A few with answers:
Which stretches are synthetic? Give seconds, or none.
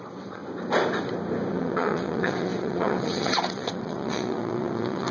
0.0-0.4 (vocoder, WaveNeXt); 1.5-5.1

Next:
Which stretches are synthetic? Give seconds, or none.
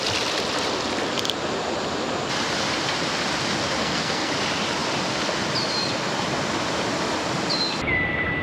3.8-4.3 (codec, SNAC)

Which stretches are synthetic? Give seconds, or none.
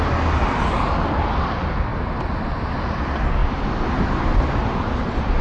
none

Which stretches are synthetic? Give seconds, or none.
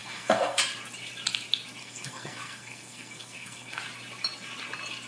0.0-0.6 (codec, SNAC); 1.8-3.8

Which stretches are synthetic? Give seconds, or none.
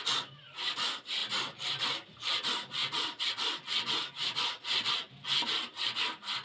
none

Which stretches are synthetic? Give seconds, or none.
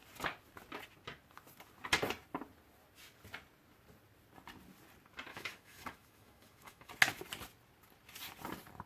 5.3-6.9 (autoencoder, DAC-VAE)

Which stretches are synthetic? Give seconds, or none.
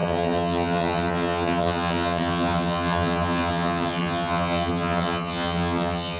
0.0-6.2 (vocoder, HiFi-GAN)